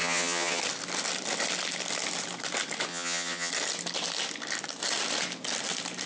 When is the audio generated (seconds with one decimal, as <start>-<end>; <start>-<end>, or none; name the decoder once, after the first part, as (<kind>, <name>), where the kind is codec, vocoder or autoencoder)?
0.0-0.6 (vocoder, HiFi-GAN); 2.9-3.5